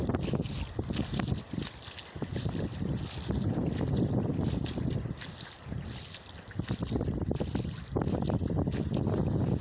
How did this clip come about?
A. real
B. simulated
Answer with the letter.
A